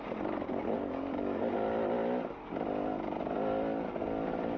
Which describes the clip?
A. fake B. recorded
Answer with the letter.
B